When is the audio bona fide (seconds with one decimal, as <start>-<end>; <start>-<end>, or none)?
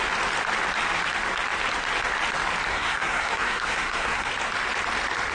0.0-2.7; 4.3-5.3